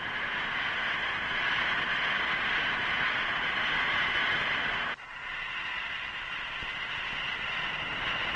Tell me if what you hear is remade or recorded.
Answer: recorded